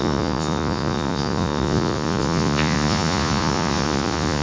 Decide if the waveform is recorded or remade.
remade